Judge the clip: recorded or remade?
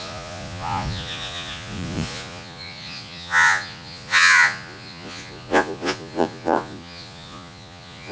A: remade